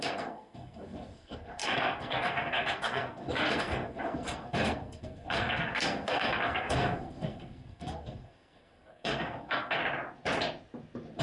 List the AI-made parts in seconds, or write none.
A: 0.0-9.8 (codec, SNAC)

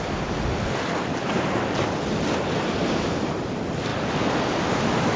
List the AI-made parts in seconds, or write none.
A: none

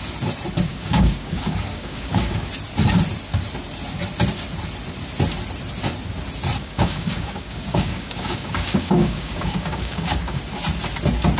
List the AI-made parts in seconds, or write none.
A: 0.7-2.5 (codec, DAC); 6.6-10.4

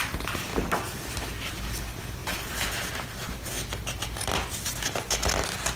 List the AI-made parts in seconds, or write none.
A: 0.0-0.5 (vocoder, BigVGAN v2); 1.5-2.2

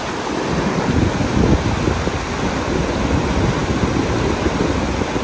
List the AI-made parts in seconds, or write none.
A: none